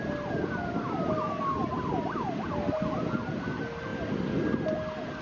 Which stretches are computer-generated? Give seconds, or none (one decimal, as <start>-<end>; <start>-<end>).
none